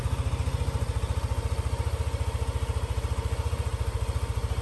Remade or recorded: recorded